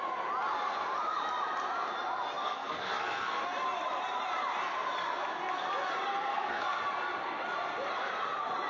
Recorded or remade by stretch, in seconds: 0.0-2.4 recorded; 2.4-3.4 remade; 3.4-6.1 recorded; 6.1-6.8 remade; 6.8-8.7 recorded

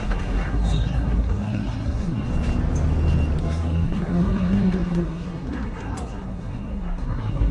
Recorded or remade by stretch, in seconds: 0.0-2.3 remade; 2.3-3.4 recorded; 3.4-7.5 remade

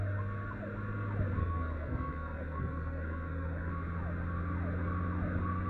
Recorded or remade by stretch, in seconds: 0.0-1.4 recorded; 1.4-3.7 remade; 3.7-5.7 recorded

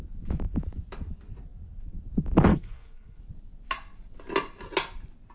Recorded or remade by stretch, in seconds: 0.0-2.5 recorded; 2.5-3.2 remade; 3.2-5.3 recorded

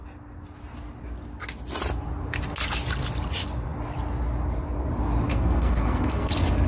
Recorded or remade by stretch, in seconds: 0.0-5.3 recorded; 5.3-6.3 remade; 6.3-6.7 recorded